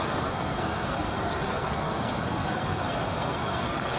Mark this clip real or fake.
fake